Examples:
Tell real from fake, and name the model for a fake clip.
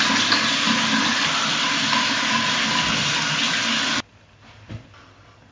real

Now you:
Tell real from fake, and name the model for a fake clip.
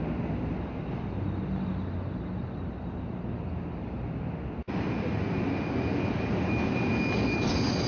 real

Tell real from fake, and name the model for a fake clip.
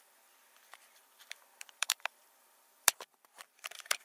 fake, vocoder, BigVGAN v2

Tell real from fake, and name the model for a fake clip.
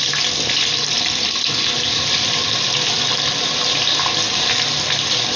real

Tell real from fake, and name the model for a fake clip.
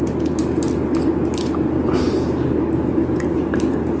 real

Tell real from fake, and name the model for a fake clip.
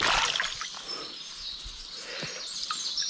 real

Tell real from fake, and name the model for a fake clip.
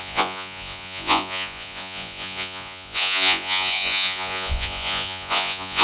fake, vocoder, Vocos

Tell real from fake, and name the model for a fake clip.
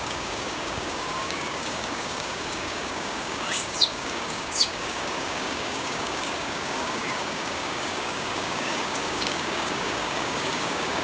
fake, codec, DAC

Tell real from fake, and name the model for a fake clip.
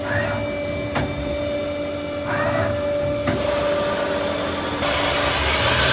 real